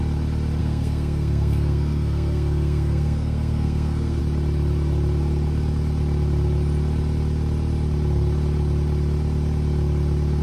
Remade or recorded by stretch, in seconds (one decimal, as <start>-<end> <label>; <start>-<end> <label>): 0.0-0.6 recorded; 0.6-4.2 remade; 4.2-10.4 recorded